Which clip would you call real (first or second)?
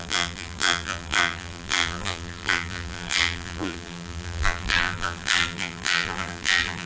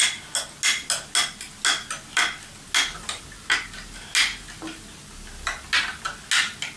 second